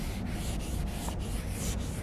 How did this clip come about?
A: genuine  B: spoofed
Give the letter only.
A